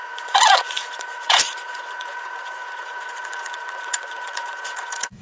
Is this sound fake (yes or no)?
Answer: yes